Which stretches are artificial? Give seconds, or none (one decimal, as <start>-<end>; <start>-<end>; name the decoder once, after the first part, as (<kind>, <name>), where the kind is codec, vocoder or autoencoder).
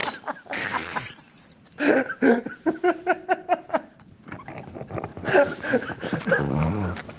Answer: 0.0-1.6 (vocoder, BigVGAN v2); 5.1-7.2